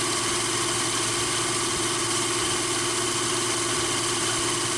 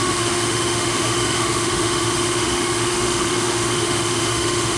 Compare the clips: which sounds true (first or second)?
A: first